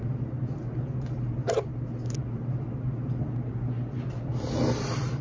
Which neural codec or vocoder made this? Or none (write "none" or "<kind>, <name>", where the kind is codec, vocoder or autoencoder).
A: none